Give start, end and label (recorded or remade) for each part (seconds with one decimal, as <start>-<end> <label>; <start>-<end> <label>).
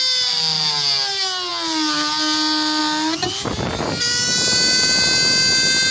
0.0-5.9 recorded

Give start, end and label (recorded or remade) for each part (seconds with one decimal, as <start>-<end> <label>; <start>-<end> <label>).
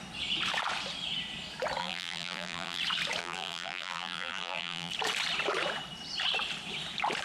0.0-1.8 recorded; 1.8-2.8 remade; 2.8-3.2 recorded; 3.2-4.9 remade; 4.9-7.2 recorded